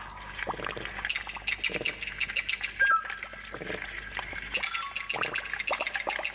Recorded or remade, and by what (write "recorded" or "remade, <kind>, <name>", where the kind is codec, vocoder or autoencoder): recorded